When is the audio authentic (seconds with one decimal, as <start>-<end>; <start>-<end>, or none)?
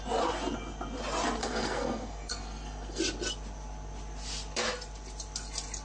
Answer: 0.0-1.4; 3.0-5.8